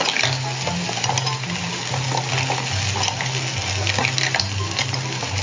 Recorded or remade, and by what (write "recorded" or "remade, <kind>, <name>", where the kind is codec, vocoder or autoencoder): recorded